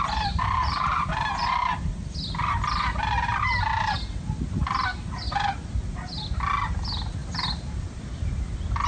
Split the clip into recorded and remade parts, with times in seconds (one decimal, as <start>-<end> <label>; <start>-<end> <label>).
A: 0.0-7.2 recorded; 7.2-8.2 remade; 8.2-8.9 recorded